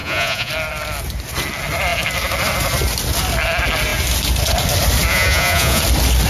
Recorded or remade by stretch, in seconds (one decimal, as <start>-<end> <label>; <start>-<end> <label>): 0.0-0.5 remade; 0.5-5.1 recorded; 5.1-5.8 remade; 5.8-6.3 recorded